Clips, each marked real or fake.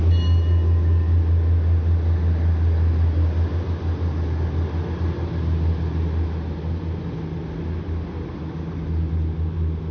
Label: real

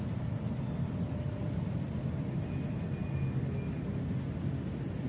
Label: real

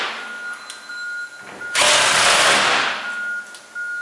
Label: real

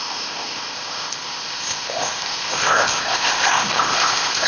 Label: fake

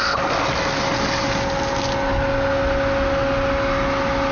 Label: real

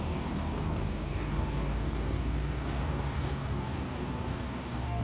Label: fake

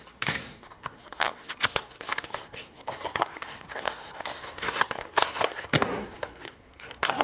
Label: fake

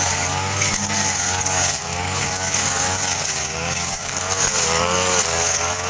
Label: fake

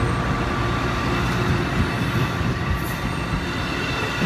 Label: real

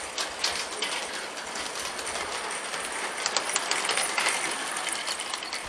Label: real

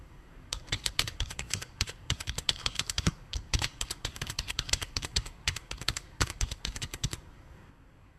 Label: fake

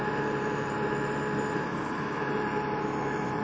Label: fake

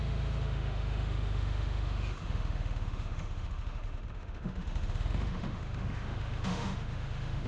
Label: fake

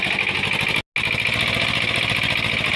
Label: real